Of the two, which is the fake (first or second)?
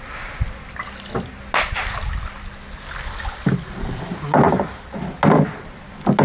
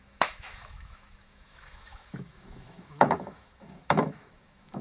second